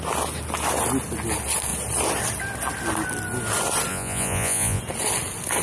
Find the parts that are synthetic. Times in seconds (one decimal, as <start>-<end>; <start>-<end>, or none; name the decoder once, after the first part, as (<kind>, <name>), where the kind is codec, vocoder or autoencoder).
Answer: 3.9-4.8 (vocoder, Vocos)